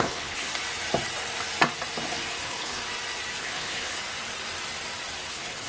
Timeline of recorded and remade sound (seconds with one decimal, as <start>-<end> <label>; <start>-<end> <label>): 0.0-0.5 remade; 0.5-2.3 recorded; 2.3-2.8 remade; 2.8-3.4 recorded; 3.4-4.0 remade; 4.0-5.3 recorded; 5.3-5.7 remade